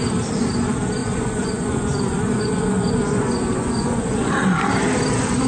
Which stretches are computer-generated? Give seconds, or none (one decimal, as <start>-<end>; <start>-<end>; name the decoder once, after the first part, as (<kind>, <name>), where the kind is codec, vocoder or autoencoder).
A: 1.0-4.3 (vocoder, Vocos)